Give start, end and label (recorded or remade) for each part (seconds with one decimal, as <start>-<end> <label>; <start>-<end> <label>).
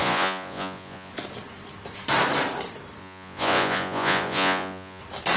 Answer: 0.0-1.1 remade; 1.1-3.0 recorded; 3.0-5.0 remade; 5.0-5.4 recorded